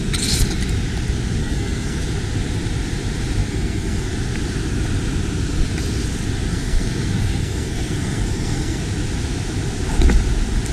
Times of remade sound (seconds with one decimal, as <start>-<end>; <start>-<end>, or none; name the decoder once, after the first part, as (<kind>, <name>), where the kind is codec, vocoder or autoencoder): 1.4-2.0 (codec, SNAC); 3.4-4.1; 6.5-8.8